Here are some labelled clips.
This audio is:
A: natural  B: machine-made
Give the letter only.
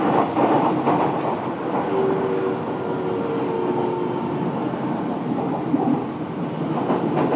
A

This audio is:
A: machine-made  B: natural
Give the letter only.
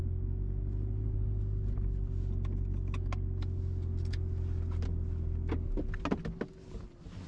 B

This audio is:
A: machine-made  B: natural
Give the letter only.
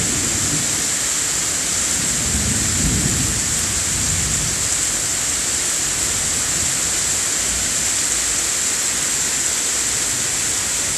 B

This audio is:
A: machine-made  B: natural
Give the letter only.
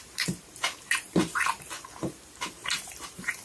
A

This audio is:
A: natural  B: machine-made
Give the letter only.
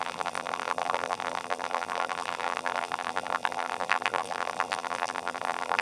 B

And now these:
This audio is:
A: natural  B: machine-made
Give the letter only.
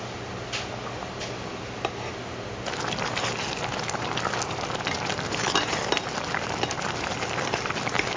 A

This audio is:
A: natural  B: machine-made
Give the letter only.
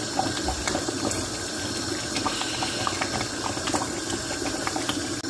A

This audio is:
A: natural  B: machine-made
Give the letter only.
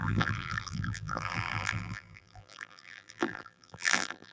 B